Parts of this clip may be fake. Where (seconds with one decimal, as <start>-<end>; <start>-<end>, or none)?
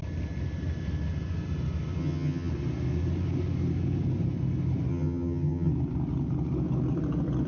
2.0-2.5; 4.9-5.7